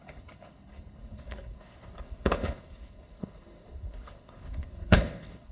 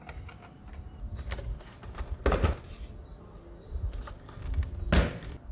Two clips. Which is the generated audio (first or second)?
first